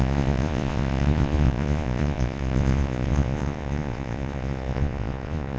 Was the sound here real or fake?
fake